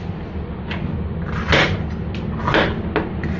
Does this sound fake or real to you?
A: real